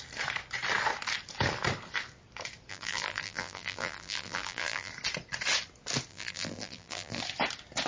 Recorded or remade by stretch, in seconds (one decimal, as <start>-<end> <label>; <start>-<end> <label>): 0.0-2.7 recorded; 2.7-4.9 remade; 4.9-6.1 recorded; 6.1-7.2 remade; 7.2-7.9 recorded